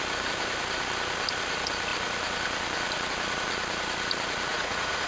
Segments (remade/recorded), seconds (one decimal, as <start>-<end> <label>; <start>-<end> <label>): 0.0-4.5 recorded; 4.5-5.1 remade